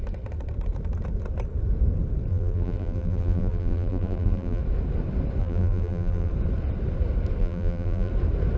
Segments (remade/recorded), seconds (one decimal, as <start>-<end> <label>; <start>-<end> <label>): 0.0-2.3 recorded; 2.3-4.6 remade; 4.6-5.4 recorded; 5.4-6.3 remade; 6.3-7.4 recorded; 7.4-8.1 remade; 8.1-8.6 recorded